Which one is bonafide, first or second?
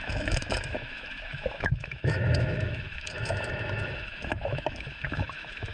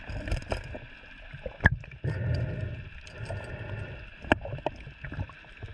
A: second